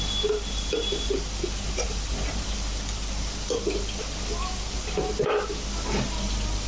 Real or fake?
real